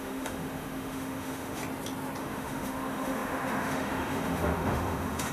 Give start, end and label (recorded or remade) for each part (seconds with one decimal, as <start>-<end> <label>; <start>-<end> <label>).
0.0-1.6 remade; 1.6-2.2 recorded; 2.2-5.3 remade